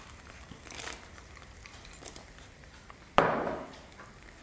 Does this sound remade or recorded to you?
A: recorded